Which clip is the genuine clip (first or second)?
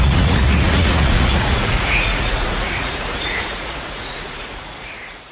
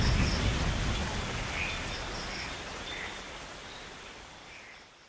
second